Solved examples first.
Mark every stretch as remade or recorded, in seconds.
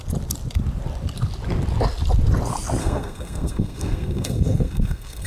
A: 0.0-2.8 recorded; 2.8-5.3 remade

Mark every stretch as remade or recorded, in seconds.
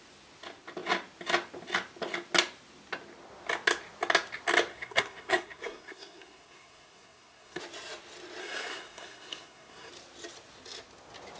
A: 0.0-4.7 recorded; 4.7-7.6 remade; 7.6-8.4 recorded; 8.4-9.9 remade; 9.9-11.4 recorded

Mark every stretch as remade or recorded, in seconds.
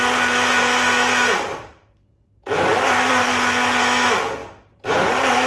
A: 0.0-5.5 recorded